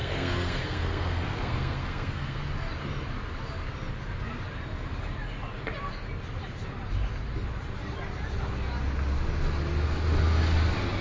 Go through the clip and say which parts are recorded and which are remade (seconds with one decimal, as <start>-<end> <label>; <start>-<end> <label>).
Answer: 0.0-2.4 remade; 2.4-11.0 recorded